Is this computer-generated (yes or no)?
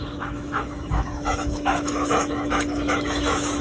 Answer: yes